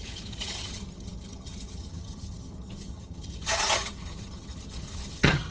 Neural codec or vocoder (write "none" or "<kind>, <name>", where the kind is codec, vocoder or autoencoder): vocoder, HiFi-GAN